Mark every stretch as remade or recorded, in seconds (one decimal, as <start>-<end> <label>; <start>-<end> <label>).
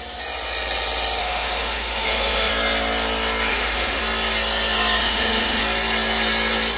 0.0-1.2 recorded; 1.2-2.5 remade; 2.5-3.5 recorded; 3.5-4.0 remade; 4.0-5.0 recorded; 5.0-5.6 remade; 5.6-6.8 recorded